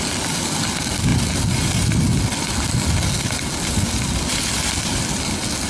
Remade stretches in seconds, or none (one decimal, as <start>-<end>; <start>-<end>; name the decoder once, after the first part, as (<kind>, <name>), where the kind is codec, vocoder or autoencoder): none